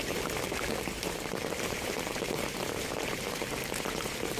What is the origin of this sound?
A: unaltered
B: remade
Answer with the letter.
B